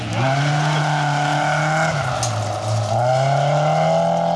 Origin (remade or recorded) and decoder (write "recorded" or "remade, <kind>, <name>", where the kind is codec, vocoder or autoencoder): recorded